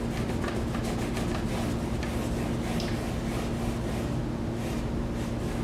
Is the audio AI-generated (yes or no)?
no